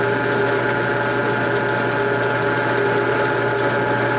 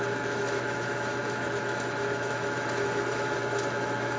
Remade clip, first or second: second